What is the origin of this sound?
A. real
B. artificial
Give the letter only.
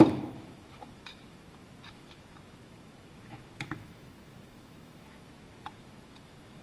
B